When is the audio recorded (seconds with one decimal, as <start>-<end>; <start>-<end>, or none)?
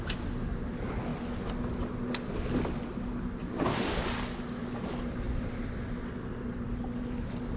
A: 0.0-7.6